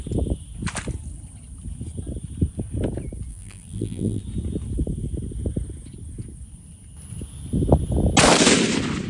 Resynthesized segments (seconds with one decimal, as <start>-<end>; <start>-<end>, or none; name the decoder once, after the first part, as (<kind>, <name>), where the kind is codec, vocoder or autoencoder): 3.3-4.2 (vocoder, BigVGAN v2)